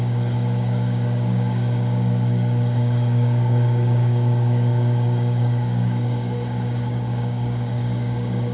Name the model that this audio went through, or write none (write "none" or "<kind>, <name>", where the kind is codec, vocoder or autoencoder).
codec, DAC